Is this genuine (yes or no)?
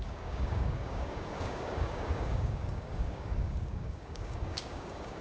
no